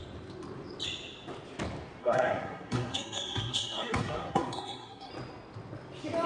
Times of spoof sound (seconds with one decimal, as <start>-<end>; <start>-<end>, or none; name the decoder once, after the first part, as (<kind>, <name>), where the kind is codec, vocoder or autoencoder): 2.0-5.1 (codec, SNAC)